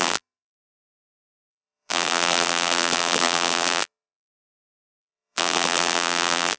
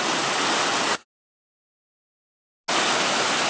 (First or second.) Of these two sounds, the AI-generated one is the first